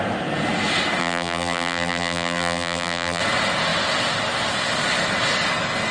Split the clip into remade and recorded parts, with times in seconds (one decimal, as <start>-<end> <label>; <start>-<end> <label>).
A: 0.0-1.0 recorded; 1.0-3.2 remade; 3.2-5.9 recorded

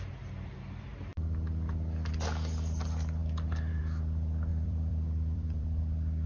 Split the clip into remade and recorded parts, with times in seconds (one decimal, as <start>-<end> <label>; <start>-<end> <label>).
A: 0.0-3.2 recorded; 3.2-3.8 remade; 3.8-4.5 recorded; 4.5-5.6 remade; 5.6-6.3 recorded

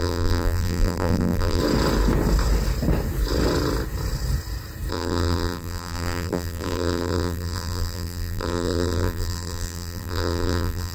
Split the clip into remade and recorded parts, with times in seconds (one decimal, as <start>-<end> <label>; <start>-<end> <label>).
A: 0.0-1.6 remade; 1.6-4.9 recorded; 4.9-10.9 remade

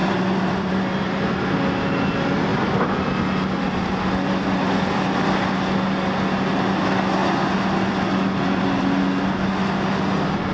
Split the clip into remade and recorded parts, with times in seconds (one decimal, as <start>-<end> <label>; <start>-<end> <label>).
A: 0.0-0.7 remade; 0.7-10.5 recorded

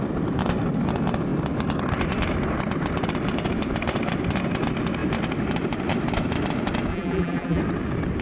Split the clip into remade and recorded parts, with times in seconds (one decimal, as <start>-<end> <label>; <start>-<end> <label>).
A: 0.0-6.9 recorded; 6.9-7.6 remade; 7.6-8.2 recorded

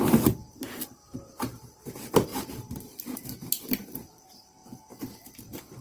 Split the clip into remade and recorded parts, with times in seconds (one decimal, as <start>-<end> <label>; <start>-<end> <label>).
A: 0.0-4.6 remade; 4.6-5.8 recorded

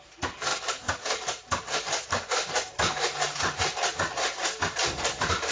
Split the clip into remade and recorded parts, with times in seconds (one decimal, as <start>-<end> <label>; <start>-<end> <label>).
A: 0.0-0.5 recorded; 0.5-3.6 remade; 3.6-5.5 recorded

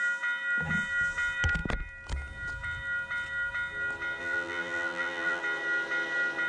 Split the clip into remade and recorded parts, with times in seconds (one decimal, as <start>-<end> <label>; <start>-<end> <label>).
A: 0.0-4.2 recorded; 4.2-5.4 remade; 5.4-6.5 recorded